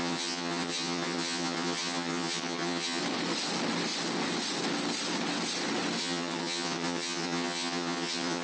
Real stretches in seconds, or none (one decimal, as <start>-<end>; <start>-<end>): 3.0-6.0